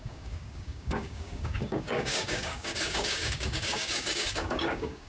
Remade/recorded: remade